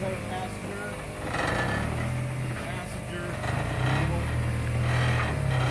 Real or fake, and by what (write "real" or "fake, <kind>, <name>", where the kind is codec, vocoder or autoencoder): real